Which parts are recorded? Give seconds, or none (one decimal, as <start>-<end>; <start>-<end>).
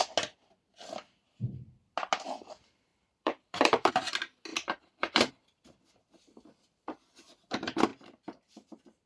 0.0-2.9; 3.9-4.5; 5.3-7.9